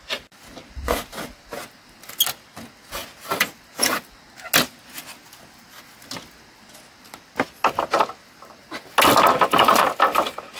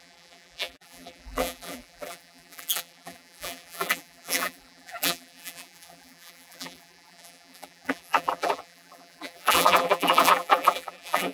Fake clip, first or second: second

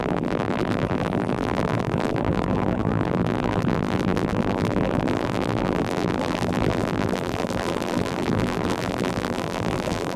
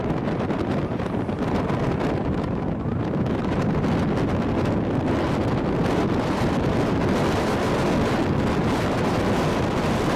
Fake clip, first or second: first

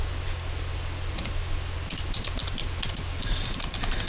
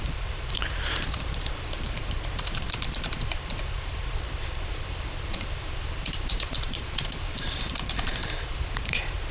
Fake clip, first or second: second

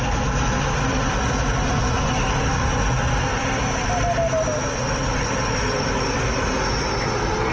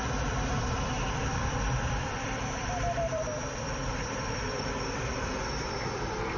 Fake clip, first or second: second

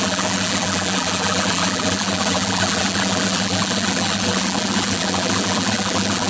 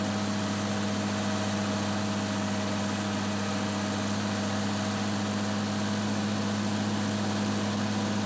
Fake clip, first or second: first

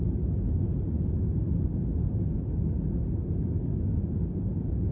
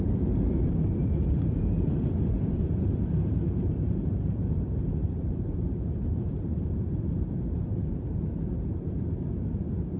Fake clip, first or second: second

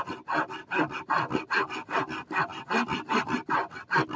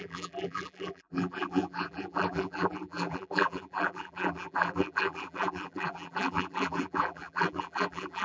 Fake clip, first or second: second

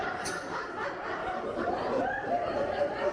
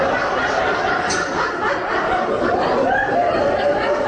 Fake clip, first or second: first